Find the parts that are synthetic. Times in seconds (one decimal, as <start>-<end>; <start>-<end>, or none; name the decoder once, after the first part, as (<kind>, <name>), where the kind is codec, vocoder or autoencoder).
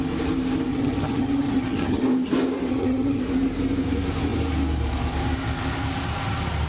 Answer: 0.7-2.0 (vocoder, HiFi-GAN); 2.7-3.2